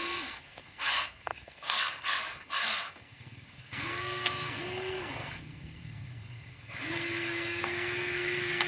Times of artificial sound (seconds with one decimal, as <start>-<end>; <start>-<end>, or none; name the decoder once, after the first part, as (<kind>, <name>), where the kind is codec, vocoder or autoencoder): 0.0-8.7 (codec, SNAC)